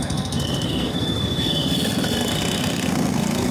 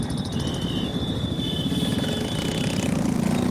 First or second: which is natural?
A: second